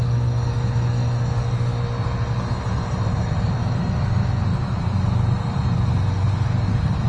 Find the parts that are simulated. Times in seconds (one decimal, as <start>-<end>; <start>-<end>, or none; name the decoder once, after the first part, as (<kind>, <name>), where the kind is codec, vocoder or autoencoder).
4.5-5.4 (vocoder, BigVGAN v2)